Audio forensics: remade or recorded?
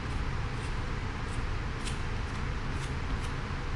recorded